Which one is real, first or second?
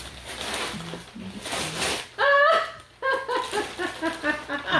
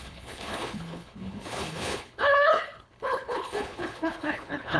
first